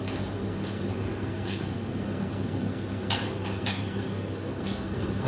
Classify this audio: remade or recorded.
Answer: remade